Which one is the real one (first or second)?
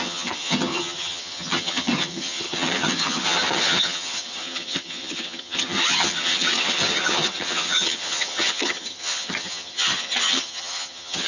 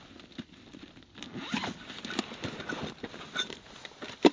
second